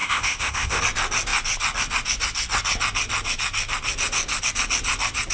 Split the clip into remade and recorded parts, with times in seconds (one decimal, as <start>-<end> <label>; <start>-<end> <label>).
0.0-0.8 remade; 0.8-5.3 recorded